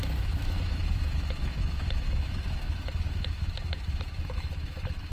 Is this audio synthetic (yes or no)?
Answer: yes